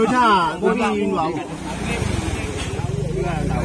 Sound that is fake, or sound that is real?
real